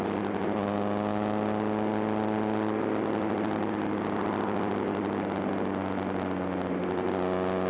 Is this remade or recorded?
recorded